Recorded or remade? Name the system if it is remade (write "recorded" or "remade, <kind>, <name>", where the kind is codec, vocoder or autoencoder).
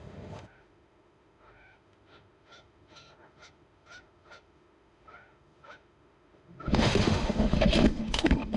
remade, autoencoder, DAC-VAE